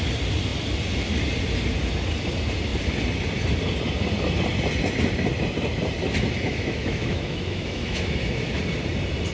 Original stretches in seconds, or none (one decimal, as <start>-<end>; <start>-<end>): 0.0-6.5; 8.6-9.3